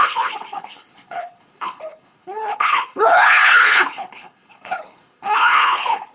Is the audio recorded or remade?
remade